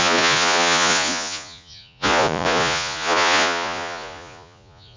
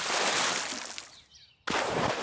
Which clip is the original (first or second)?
second